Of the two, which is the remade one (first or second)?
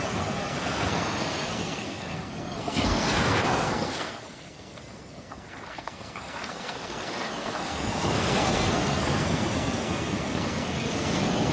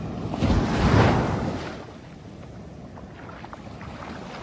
first